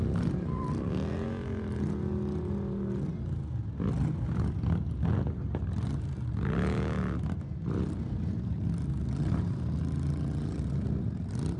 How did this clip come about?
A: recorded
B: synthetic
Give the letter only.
A